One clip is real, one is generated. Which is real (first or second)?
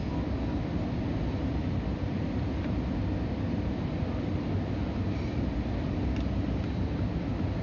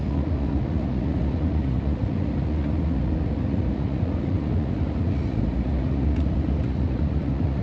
first